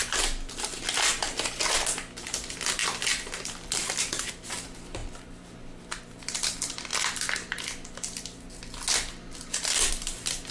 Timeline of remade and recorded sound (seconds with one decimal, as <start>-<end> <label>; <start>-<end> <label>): 0.0-2.8 recorded; 2.8-4.3 remade; 4.3-10.5 recorded